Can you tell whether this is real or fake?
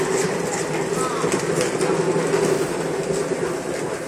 real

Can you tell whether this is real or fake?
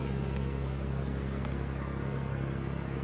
fake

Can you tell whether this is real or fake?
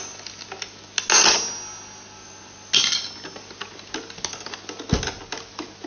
real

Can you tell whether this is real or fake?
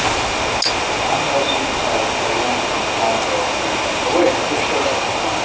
real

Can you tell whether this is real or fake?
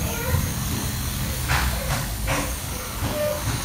fake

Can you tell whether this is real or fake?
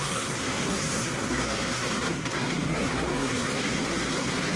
fake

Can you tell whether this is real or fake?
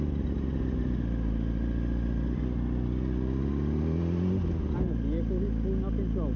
real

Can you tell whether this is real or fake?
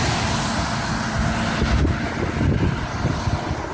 real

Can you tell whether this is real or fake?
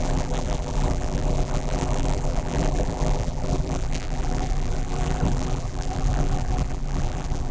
fake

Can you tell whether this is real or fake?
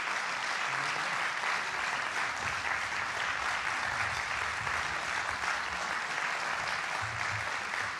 real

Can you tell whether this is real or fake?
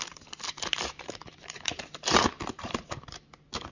fake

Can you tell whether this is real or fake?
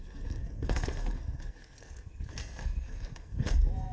fake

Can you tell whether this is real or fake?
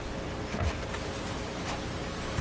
real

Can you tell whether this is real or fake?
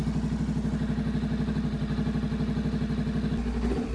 real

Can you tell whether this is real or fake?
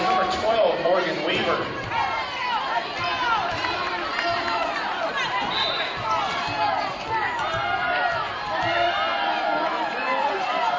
fake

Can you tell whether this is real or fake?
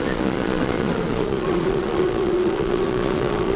fake